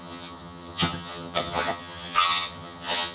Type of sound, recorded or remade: remade